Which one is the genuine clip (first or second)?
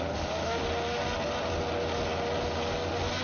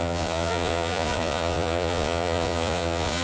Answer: first